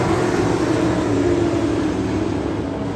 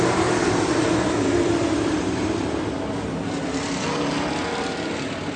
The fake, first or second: second